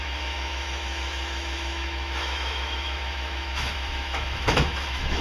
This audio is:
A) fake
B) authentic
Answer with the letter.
A